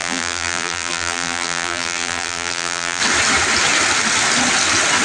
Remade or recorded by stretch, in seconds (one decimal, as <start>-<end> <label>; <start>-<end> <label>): 0.0-3.0 remade; 3.0-5.0 recorded